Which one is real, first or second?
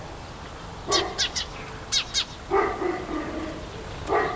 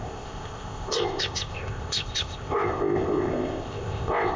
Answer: first